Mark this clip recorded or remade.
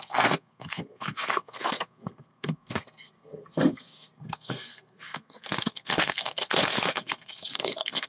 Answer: remade